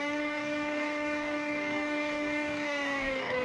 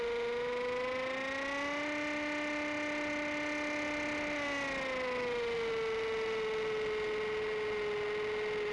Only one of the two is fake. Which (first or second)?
first